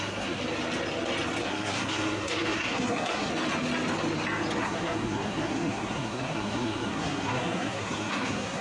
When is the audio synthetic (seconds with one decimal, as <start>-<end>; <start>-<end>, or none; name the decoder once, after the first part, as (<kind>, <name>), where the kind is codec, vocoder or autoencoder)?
0.0-0.4 (codec, SNAC); 1.4-3.3; 4.6-8.6